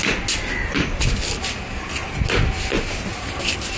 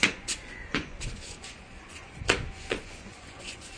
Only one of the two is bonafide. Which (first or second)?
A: first